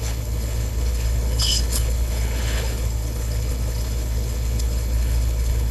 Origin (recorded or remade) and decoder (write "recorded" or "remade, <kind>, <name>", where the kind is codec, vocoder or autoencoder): remade, codec, HILCodec